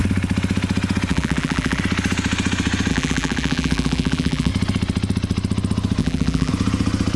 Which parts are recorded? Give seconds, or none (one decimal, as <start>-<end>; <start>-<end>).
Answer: 0.0-1.1; 1.8-2.9; 4.5-6.0; 6.5-7.2